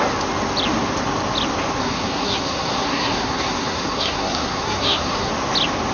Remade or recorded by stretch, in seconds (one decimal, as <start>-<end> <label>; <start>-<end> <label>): 0.0-1.8 recorded; 1.8-5.3 remade; 5.3-5.9 recorded